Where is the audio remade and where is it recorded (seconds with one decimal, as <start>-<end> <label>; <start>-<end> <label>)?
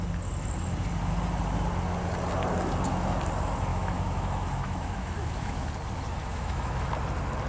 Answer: 0.0-3.7 recorded; 3.7-5.7 remade; 5.7-6.2 recorded; 6.2-6.9 remade; 6.9-7.5 recorded